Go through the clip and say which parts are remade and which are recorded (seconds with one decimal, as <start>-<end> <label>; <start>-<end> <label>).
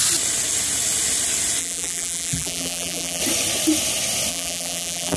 0.0-1.6 recorded; 1.6-3.2 remade; 3.2-4.3 recorded; 4.3-5.2 remade